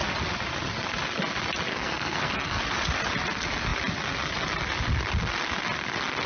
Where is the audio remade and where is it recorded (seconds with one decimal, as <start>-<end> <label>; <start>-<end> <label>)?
0.0-1.7 recorded; 1.7-2.6 remade; 2.6-6.3 recorded